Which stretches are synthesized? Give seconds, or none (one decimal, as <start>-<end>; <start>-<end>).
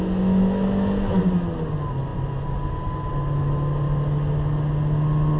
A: none